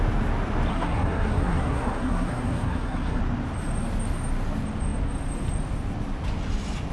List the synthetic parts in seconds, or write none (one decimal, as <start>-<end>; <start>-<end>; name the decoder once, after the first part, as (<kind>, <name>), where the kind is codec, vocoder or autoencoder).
0.7-3.2 (codec, SNAC)

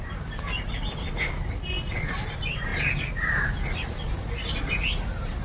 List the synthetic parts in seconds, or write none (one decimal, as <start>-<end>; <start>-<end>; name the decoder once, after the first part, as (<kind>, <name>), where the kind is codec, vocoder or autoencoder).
none

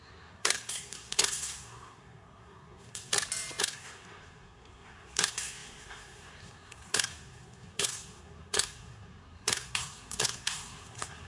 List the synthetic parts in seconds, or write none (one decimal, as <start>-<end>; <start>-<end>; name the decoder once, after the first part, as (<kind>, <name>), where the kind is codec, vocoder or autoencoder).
0.0-3.1 (codec, SNAC); 3.6-11.3

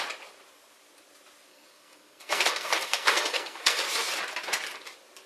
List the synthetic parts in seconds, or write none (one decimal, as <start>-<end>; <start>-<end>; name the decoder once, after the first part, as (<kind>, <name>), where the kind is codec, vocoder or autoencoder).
1.5-3.8 (codec, SNAC)

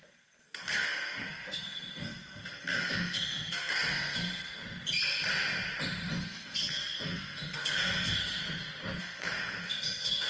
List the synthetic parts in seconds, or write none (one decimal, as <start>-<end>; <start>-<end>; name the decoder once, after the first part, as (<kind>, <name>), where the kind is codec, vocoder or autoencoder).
0.0-4.6 (codec, SNAC); 6.2-8.4; 9.0-10.3

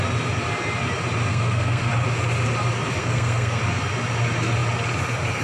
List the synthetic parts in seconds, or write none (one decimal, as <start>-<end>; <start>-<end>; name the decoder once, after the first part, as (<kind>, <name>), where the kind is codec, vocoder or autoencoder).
1.3-1.9 (codec, SNAC); 3.0-3.6

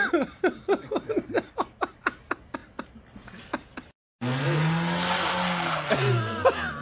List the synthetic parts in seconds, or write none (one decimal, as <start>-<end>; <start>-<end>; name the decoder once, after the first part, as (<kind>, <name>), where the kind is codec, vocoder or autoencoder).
none